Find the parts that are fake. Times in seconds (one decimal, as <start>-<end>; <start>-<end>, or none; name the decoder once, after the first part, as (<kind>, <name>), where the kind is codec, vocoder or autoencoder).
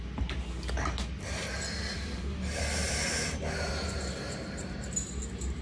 none